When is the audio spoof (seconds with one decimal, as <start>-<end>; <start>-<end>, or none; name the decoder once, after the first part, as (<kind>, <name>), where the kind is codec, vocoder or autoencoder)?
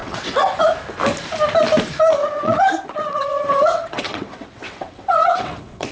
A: 0.0-0.6 (vocoder, WaveNeXt); 2.2-5.9